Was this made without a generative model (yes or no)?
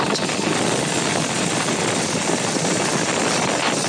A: yes